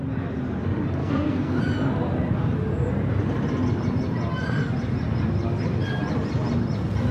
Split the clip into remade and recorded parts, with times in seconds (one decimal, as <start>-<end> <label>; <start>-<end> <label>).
0.0-1.0 recorded; 1.0-1.6 remade; 1.6-7.1 recorded